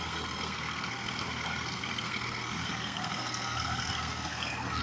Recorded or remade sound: remade